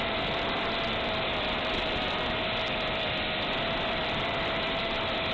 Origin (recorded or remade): remade